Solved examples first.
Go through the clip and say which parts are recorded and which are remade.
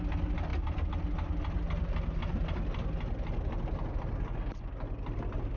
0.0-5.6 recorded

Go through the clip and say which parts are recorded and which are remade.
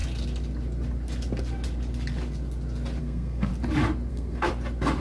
0.0-3.0 recorded; 3.0-3.5 remade; 3.5-4.1 recorded; 4.1-4.5 remade; 4.5-5.0 recorded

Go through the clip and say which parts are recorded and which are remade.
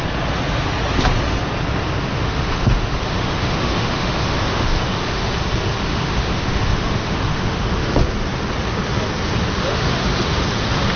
0.0-2.1 recorded; 2.1-5.3 remade; 5.3-5.9 recorded; 5.9-8.0 remade; 8.0-9.7 recorded; 9.7-10.4 remade; 10.4-11.0 recorded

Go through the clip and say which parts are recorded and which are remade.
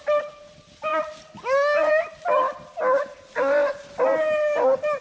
0.0-5.0 recorded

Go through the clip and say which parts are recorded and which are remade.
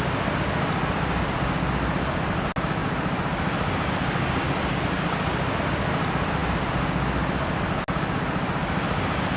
0.0-9.4 recorded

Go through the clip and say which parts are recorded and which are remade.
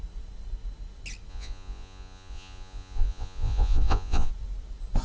0.0-1.3 recorded; 1.3-4.3 remade; 4.3-5.0 recorded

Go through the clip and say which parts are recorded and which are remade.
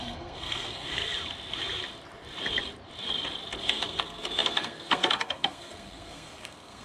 0.0-1.0 remade; 1.0-3.6 recorded; 3.6-6.8 remade